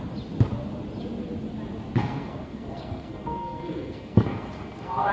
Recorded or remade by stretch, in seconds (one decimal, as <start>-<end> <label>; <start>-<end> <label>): 0.0-2.0 recorded; 2.0-5.1 remade